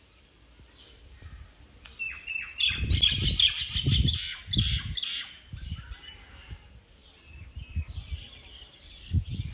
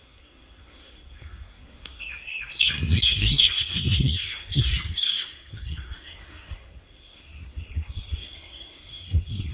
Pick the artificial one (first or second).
second